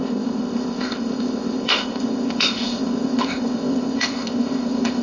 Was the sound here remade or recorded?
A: remade